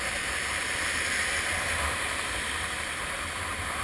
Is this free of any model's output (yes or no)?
no